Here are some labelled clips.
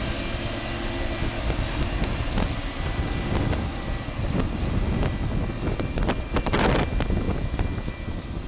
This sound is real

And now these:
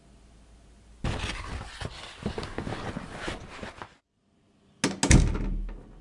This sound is real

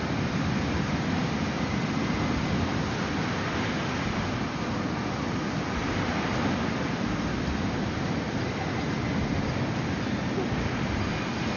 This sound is real